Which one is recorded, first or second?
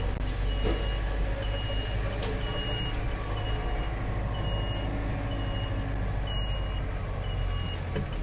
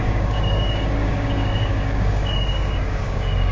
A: first